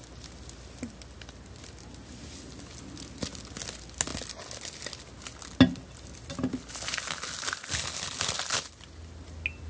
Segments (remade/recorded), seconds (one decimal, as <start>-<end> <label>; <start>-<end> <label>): 0.0-9.7 recorded